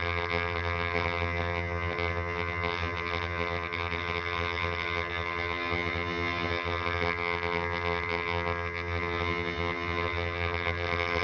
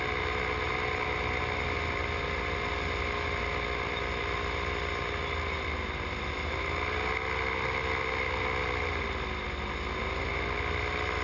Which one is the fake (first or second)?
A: first